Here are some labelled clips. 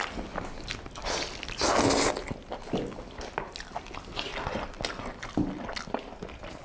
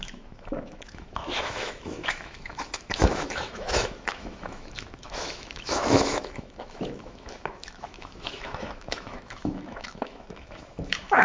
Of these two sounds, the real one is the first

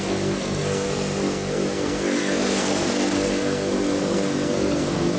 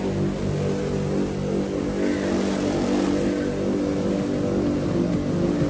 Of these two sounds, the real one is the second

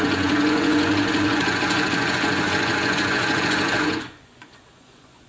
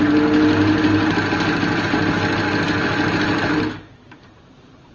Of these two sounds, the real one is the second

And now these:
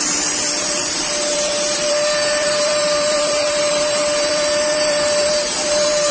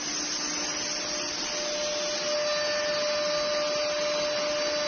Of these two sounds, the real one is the second